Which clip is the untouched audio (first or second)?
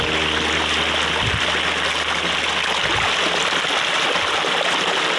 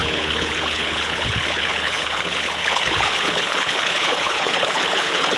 first